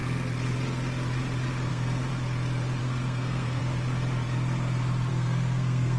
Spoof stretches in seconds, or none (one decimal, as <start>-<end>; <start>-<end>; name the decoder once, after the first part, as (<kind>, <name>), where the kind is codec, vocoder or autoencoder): 1.7-2.1 (codec, SNAC); 2.8-3.6; 5.1-6.0